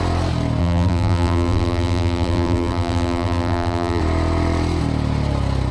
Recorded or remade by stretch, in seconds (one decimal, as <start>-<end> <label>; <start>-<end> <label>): 0.0-0.6 recorded; 0.6-4.0 remade; 4.0-5.7 recorded